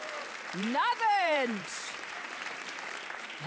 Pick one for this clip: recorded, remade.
remade